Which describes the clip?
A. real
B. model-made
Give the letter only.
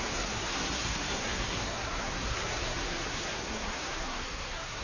B